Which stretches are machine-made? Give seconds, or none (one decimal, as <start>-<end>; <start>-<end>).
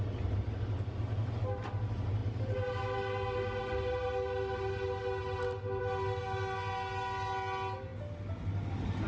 none